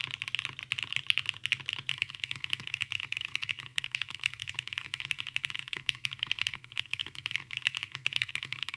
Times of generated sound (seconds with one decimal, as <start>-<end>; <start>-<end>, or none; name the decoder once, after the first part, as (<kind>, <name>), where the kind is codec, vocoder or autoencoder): 1.9-8.8 (codec, SNAC)